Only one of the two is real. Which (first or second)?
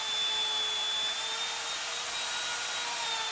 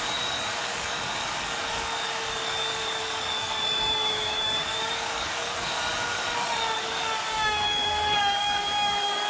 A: first